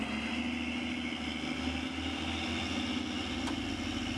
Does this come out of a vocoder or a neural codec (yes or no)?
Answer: no